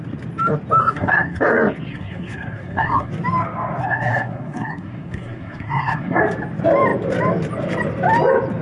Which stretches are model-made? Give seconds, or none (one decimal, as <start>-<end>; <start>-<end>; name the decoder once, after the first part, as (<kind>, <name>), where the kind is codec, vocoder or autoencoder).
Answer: 0.8-1.4 (codec, SNAC); 1.9-3.1; 3.8-6.2